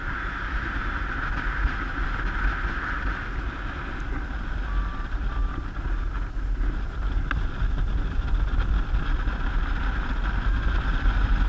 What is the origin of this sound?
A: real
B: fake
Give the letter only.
A